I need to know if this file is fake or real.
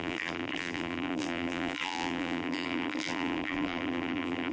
fake